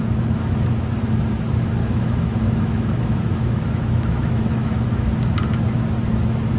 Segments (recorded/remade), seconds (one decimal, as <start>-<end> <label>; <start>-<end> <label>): 0.0-1.8 recorded; 1.8-5.2 remade; 5.2-6.6 recorded